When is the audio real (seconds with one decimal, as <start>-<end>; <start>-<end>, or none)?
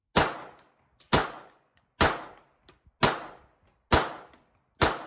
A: 0.0-1.2; 1.9-5.1